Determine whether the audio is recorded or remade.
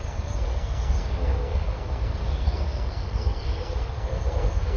remade